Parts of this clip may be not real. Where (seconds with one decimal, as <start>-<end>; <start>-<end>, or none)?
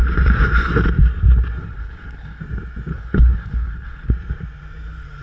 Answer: 1.6-2.4; 2.9-4.1